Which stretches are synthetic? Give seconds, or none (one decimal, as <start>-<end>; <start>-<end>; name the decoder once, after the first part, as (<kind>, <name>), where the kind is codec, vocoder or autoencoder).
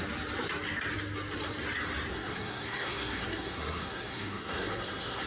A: 2.1-5.3 (codec, SNAC)